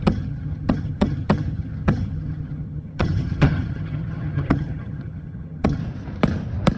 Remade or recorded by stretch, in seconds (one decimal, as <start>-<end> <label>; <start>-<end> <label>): 0.0-5.8 remade; 5.8-6.8 recorded